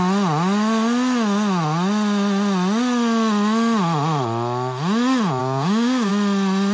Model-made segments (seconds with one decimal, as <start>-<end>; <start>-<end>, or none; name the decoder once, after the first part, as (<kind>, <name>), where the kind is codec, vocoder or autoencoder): 5.4-6.1 (codec, DAC)